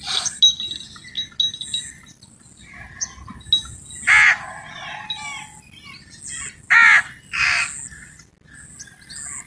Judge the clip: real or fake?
real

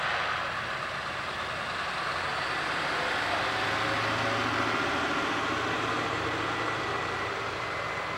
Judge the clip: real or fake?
real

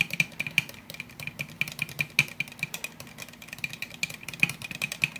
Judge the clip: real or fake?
real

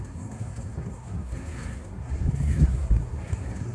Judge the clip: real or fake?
fake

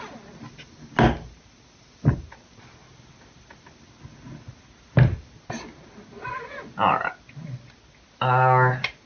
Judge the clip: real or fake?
real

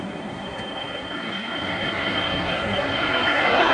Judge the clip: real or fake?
fake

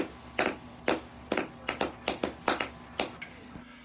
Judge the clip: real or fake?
real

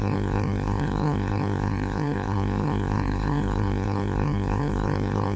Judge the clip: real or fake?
fake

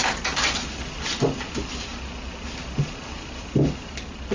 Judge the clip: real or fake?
real